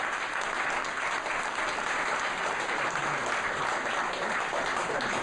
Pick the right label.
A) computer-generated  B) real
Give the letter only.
B